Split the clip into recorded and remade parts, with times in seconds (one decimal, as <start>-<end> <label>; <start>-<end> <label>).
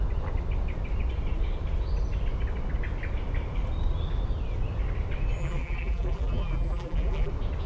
0.0-5.4 recorded; 5.4-7.3 remade; 7.3-7.7 recorded